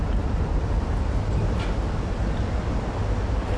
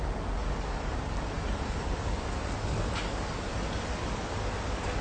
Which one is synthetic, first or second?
second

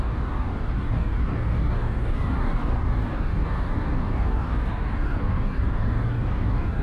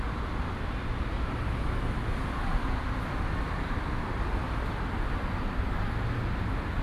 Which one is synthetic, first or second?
first